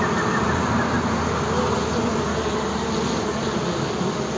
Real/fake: real